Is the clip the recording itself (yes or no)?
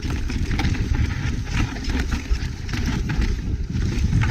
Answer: yes